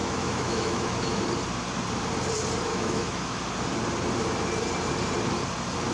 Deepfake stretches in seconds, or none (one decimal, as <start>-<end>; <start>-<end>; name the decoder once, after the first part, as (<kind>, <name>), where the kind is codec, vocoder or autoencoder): 0.0-1.2 (autoencoder, DAC-VAE); 2.7-3.4

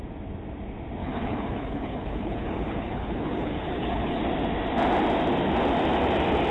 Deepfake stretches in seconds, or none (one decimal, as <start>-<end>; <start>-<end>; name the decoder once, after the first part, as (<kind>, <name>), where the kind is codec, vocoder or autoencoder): 1.0-4.2 (codec, HILCodec)

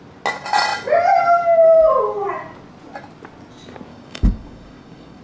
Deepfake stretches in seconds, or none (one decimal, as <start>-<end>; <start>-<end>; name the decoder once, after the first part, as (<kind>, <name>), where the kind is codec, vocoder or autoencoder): 3.9-5.2 (codec, DAC)

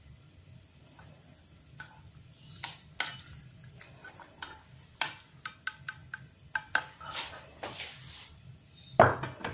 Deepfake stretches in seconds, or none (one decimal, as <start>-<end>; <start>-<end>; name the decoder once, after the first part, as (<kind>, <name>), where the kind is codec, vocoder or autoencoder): none